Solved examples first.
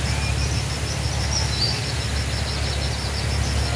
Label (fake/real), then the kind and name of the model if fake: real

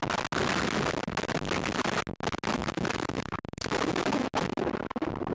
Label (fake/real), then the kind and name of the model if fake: real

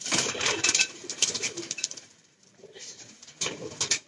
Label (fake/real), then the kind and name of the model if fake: fake, vocoder, BigVGAN v2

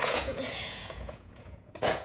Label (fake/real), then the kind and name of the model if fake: fake, vocoder, Vocos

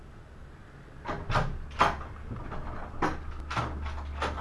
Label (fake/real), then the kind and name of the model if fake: real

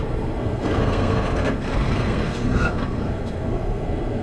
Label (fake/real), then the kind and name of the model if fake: fake, codec, SNAC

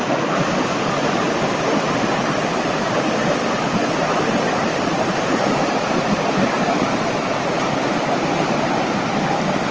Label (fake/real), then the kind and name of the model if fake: fake, vocoder, BigVGAN v2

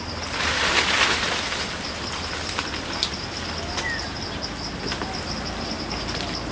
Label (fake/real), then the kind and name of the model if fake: real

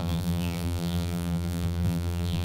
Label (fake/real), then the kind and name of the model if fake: fake, vocoder, BigVGAN v2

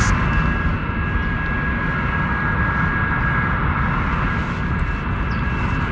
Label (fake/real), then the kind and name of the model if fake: real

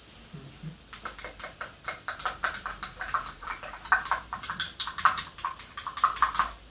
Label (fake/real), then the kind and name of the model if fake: real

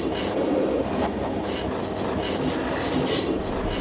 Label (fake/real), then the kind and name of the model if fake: real